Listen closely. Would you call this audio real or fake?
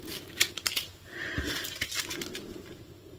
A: real